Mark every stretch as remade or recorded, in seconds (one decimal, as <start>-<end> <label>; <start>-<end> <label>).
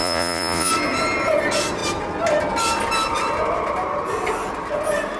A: 0.0-0.7 remade; 0.7-5.2 recorded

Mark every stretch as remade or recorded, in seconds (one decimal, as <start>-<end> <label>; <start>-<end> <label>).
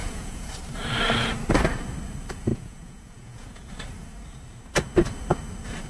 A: 0.0-0.5 remade; 0.5-2.5 recorded; 2.5-3.7 remade; 3.7-5.9 recorded